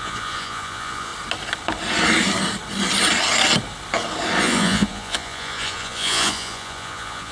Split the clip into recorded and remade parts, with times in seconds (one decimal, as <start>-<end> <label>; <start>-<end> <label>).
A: 0.0-1.1 remade; 1.1-4.4 recorded; 4.4-7.3 remade